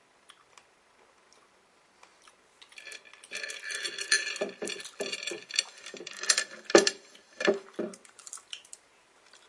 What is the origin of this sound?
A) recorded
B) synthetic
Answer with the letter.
A